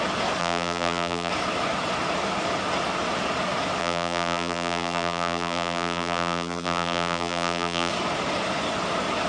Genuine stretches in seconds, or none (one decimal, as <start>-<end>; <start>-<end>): 0.0-0.4; 1.3-3.8; 7.9-9.3